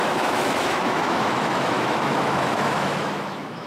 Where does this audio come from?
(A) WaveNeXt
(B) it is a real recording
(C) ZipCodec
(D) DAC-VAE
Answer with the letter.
D